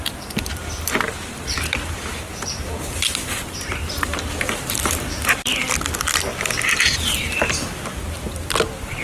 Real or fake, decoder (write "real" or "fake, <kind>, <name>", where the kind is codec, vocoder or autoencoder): fake, vocoder, BigVGAN v2